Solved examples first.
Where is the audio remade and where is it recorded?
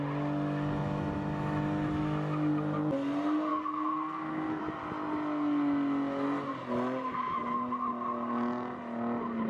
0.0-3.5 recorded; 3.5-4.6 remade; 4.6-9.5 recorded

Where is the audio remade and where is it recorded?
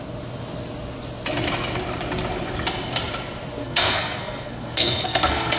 0.0-3.6 recorded; 3.6-5.6 remade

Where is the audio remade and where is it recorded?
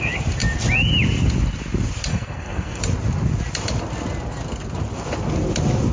0.0-2.1 recorded; 2.1-2.8 remade; 2.8-5.9 recorded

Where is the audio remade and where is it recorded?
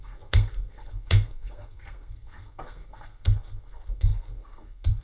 0.0-5.0 remade